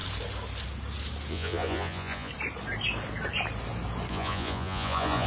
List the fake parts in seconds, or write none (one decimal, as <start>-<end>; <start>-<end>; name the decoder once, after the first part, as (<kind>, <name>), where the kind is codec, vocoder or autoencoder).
1.3-2.3 (vocoder, Vocos); 4.1-5.3